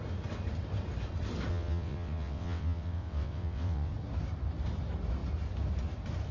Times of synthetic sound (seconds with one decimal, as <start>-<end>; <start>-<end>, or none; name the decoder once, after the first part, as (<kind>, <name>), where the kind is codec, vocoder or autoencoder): 1.5-3.9 (vocoder, WaveNeXt)